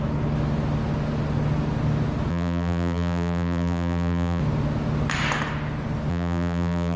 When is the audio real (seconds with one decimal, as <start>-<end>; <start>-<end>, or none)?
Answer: 0.0-2.3; 4.4-6.1